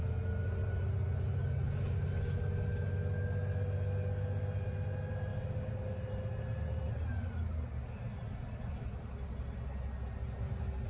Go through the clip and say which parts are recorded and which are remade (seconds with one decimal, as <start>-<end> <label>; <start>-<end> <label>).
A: 0.0-10.9 recorded